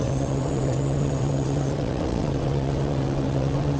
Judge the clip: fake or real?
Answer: fake